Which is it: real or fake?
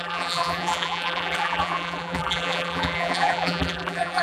fake